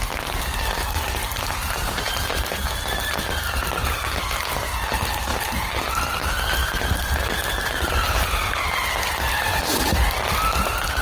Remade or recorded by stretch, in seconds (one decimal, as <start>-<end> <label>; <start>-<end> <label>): 0.0-1.2 recorded; 1.2-2.1 remade; 2.1-5.3 recorded; 5.3-5.9 remade; 5.9-6.6 recorded; 6.6-8.9 remade; 8.9-11.0 recorded